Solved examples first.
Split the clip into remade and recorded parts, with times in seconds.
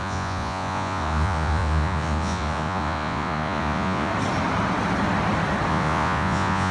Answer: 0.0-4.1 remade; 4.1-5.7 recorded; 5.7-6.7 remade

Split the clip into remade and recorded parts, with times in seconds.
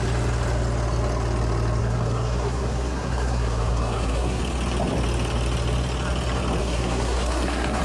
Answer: 0.0-1.8 recorded; 1.8-4.4 remade; 4.4-6.6 recorded; 6.6-7.8 remade